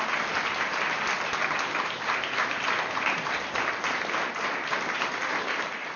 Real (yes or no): yes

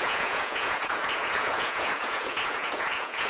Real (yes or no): no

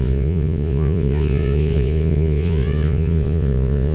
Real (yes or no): no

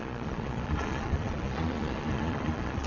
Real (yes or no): no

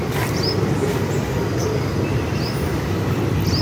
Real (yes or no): yes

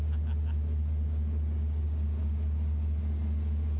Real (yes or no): yes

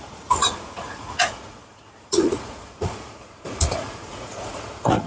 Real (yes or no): no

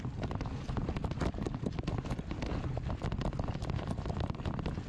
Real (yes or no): yes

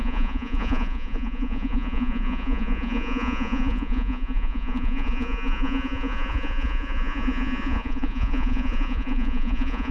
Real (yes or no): no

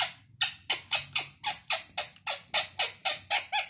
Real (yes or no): yes